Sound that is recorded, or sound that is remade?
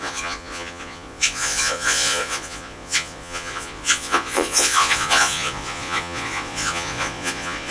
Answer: remade